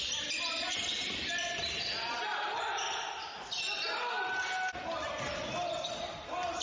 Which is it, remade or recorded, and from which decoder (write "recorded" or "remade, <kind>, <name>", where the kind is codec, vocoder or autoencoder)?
recorded